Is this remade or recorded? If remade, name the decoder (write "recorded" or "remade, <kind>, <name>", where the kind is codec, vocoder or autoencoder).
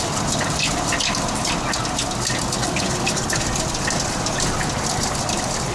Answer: recorded